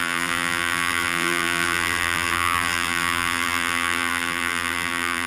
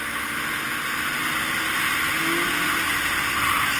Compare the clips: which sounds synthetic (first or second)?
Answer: first